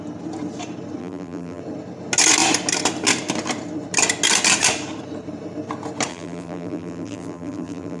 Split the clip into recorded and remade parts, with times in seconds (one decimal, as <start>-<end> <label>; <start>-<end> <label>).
0.0-1.0 recorded; 1.0-1.6 remade; 1.6-6.1 recorded; 6.1-8.0 remade

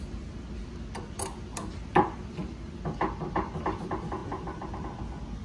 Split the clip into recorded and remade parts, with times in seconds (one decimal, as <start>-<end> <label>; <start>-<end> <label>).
0.0-5.4 recorded